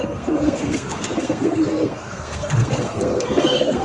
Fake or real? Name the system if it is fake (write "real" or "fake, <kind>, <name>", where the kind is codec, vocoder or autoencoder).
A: fake, codec, SNAC